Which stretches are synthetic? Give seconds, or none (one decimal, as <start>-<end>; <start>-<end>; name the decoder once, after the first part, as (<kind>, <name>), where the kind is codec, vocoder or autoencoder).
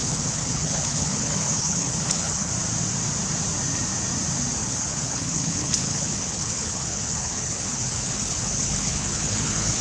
0.0-2.5 (codec, HILCodec); 4.6-9.8